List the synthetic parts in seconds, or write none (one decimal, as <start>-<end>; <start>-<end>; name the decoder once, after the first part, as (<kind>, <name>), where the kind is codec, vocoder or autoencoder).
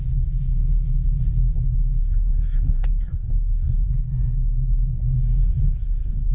2.0-3.9 (codec, SNAC); 5.4-6.3